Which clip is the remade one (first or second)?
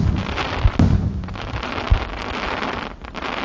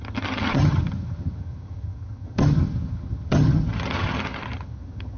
second